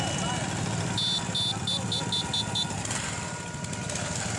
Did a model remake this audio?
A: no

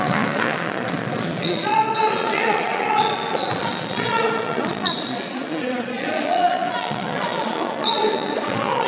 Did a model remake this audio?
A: yes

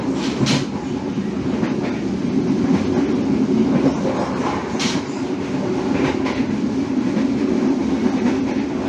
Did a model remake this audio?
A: no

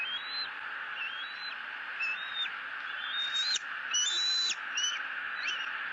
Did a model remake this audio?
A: no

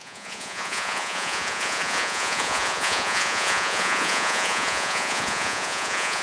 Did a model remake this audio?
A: yes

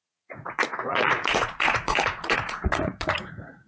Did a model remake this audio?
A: yes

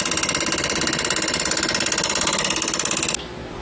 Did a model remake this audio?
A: no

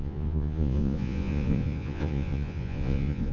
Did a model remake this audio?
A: yes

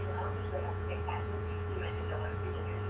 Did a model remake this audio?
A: yes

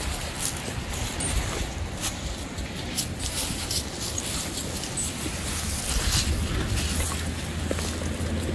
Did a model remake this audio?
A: no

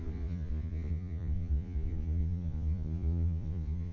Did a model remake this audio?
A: yes